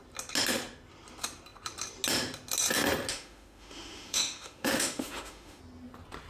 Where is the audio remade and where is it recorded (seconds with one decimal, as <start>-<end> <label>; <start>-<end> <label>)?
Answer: 0.0-3.1 recorded; 3.1-5.6 remade; 5.6-6.3 recorded